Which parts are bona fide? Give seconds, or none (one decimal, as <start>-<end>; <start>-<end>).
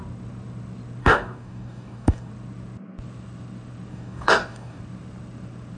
0.0-1.0; 2.3-3.9; 4.8-5.8